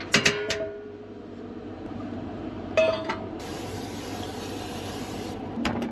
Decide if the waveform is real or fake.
fake